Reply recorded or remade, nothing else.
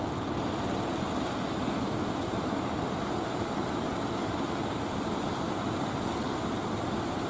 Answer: recorded